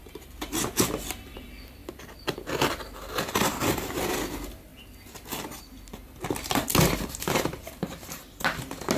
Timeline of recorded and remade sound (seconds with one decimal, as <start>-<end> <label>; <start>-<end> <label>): 0.0-9.0 recorded